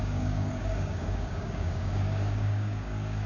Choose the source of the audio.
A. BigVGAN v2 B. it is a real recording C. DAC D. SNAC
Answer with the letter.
C